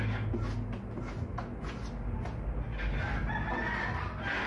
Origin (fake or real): real